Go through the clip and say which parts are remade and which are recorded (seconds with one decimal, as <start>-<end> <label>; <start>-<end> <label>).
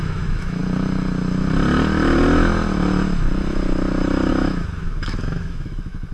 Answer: 0.0-0.6 remade; 0.6-4.3 recorded; 4.3-6.1 remade